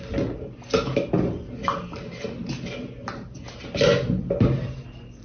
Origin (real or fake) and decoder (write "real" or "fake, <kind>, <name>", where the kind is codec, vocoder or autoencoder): real